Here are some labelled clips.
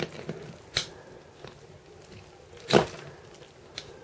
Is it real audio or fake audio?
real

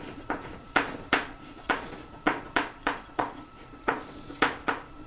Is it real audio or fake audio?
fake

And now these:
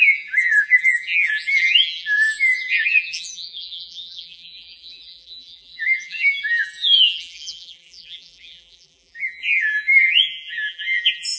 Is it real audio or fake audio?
fake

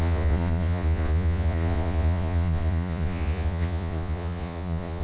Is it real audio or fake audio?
fake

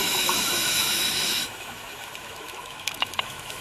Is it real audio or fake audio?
fake